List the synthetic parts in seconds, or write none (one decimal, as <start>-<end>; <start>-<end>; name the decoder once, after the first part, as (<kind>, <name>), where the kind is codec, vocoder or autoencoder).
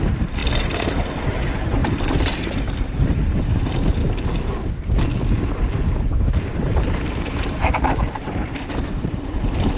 0.0-0.4 (vocoder, BigVGAN v2); 0.9-4.0; 6.1-9.8